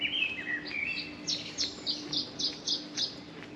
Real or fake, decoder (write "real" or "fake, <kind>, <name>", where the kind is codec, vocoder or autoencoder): real